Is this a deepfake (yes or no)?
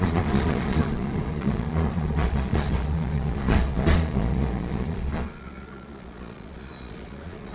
yes